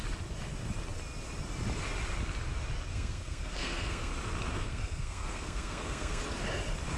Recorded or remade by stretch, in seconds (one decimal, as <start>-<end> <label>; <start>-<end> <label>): 0.0-2.9 recorded; 2.9-4.1 remade; 4.1-4.5 recorded; 4.5-6.2 remade; 6.2-7.0 recorded